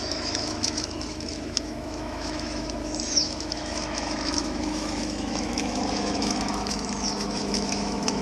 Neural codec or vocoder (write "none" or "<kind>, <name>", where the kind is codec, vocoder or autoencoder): autoencoder, DAC-VAE